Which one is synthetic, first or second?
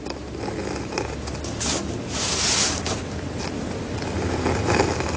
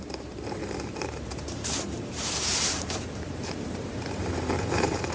second